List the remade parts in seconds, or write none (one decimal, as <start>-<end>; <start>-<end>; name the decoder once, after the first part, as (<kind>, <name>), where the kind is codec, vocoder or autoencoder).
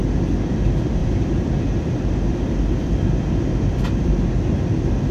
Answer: 1.0-4.1 (vocoder, BigVGAN v2)